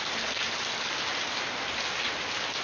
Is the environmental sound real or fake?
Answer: real